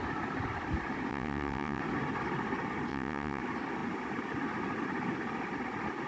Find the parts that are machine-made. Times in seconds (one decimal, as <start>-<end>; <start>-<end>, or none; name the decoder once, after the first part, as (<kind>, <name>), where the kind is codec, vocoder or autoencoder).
1.1-1.8 (vocoder, WaveNeXt); 2.9-3.4